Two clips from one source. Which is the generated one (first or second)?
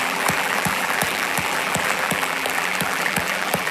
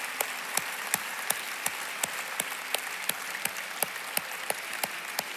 first